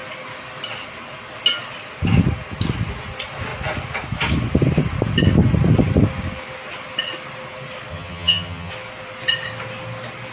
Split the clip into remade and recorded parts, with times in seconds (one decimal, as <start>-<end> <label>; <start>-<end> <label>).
0.0-7.9 recorded; 7.9-8.7 remade; 8.7-10.3 recorded